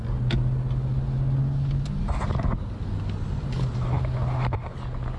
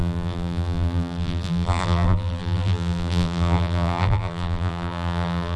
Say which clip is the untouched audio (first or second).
first